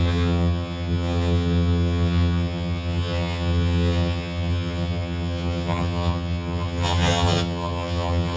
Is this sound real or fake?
fake